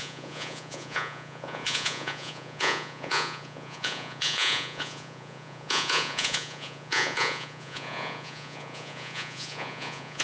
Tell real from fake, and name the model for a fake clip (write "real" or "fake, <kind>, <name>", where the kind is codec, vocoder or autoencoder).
fake, vocoder, Vocos